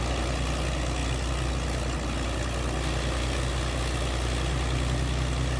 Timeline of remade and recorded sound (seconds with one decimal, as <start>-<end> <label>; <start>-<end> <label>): 0.0-5.6 recorded